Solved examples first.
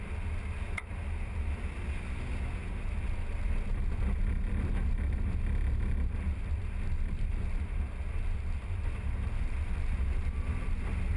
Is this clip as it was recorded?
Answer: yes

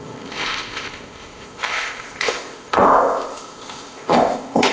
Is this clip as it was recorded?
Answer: no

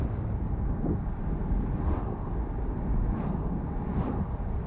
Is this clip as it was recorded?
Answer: yes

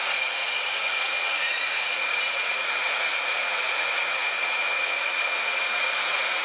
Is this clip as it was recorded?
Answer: no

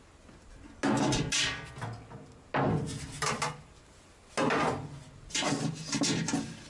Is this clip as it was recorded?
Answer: yes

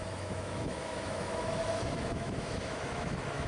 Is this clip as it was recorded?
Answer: no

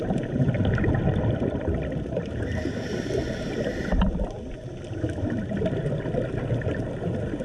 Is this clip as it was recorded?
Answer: no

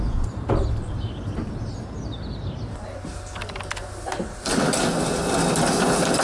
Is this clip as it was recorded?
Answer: yes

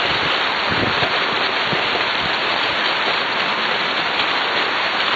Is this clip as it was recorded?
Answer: yes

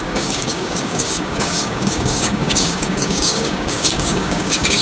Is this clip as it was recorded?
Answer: no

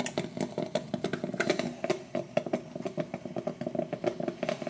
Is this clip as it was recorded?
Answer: yes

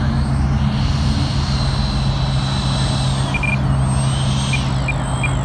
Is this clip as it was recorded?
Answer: yes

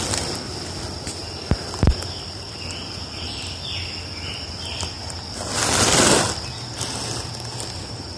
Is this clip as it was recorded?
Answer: no